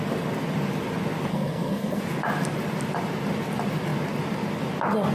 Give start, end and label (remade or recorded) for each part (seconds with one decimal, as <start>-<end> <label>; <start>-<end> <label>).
0.0-1.3 recorded; 1.3-2.0 remade; 2.0-5.1 recorded